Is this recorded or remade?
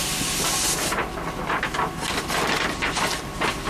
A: recorded